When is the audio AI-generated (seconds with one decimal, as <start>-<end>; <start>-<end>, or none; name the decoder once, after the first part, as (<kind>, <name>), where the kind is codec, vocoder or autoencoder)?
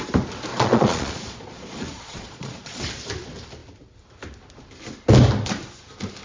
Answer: 0.5-2.8 (vocoder, Vocos)